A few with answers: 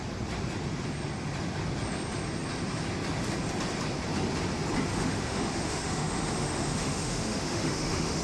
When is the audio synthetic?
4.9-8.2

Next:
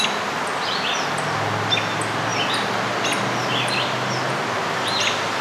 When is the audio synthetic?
none

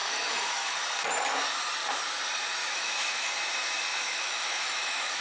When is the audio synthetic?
0.0-0.8; 2.6-3.3; 3.9-5.2